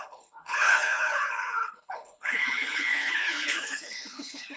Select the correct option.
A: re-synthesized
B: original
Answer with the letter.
A